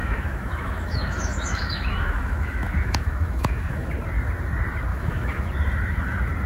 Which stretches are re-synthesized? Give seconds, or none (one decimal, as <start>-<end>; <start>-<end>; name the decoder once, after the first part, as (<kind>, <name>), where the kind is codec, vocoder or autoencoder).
0.0-3.9 (autoencoder, DAC-VAE); 4.9-5.5